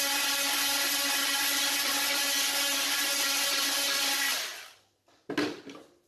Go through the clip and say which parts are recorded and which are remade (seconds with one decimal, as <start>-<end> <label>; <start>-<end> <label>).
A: 0.0-6.1 recorded